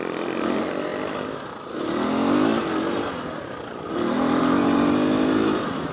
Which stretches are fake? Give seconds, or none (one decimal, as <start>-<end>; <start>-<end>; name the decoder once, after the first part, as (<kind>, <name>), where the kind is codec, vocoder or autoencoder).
none